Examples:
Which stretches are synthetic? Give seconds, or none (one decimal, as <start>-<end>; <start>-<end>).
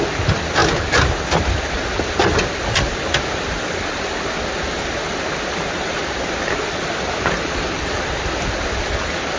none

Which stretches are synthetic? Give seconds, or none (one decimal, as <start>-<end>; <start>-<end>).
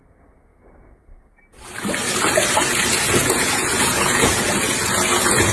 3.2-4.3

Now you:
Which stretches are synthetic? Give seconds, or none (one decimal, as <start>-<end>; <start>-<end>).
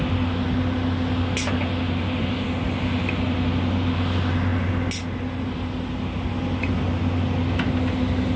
none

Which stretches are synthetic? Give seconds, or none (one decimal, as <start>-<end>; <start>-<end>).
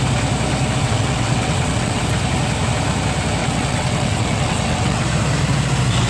0.8-2.0; 3.4-5.0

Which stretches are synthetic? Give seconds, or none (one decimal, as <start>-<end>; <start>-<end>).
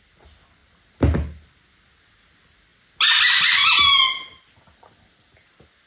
none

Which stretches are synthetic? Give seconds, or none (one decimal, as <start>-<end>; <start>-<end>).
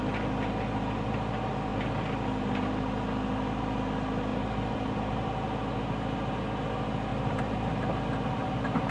4.3-5.3; 7.1-8.9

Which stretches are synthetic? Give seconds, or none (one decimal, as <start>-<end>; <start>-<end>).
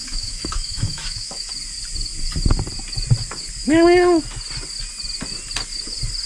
0.0-1.5; 3.6-4.2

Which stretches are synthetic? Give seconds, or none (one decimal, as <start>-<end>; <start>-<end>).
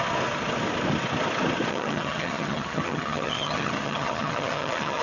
1.7-5.0